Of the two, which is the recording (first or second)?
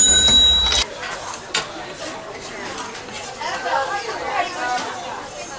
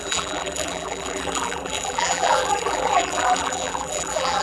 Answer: first